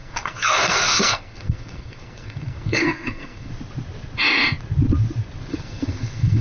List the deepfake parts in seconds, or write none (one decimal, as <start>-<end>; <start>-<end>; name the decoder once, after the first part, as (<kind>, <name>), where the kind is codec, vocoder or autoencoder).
0.0-3.5 (codec, SNAC); 5.5-6.4